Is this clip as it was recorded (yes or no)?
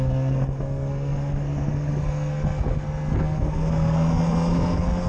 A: no